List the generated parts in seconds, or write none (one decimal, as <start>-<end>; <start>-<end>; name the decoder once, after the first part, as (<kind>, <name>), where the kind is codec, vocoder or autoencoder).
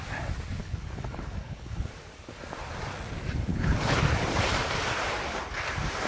0.6-1.9 (codec, HILCodec); 3.5-4.0